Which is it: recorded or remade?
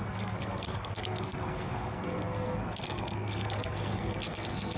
remade